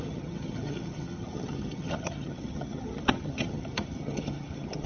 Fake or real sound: fake